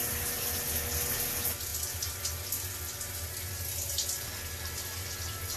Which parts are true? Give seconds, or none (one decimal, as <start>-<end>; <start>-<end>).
0.0-5.6